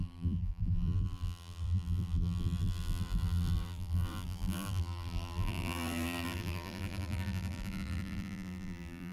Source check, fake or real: fake